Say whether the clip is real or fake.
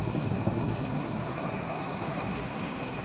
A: fake